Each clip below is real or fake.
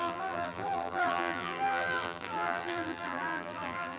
fake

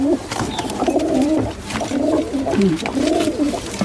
fake